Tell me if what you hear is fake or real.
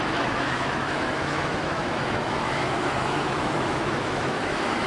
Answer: fake